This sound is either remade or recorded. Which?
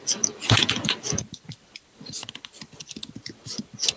remade